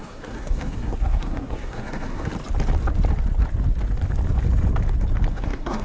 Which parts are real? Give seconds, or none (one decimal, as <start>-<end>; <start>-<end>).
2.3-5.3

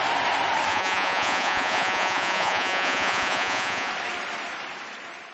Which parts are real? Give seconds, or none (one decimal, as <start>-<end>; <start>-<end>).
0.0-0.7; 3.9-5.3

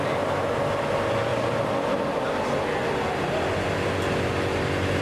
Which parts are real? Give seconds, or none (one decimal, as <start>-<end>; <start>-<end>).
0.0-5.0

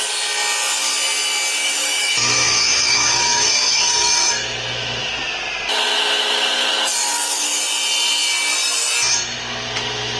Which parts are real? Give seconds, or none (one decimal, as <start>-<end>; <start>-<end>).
0.0-1.6; 4.7-7.0; 7.6-10.2

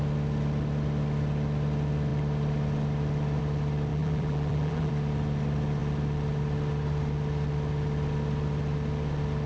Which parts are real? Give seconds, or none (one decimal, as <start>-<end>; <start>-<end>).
0.0-3.9; 4.9-9.5